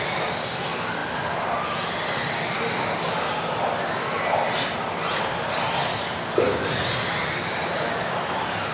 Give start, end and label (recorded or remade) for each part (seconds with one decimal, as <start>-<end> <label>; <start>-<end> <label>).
0.0-8.7 recorded